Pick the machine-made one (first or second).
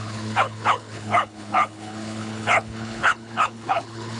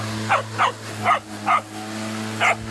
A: first